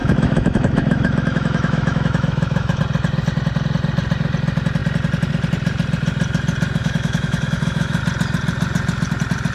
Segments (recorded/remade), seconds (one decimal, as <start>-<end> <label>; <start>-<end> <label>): 0.0-2.8 remade; 2.8-6.8 recorded; 6.8-8.0 remade; 8.0-9.5 recorded